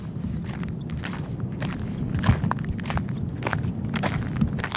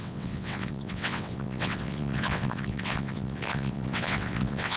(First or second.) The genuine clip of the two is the first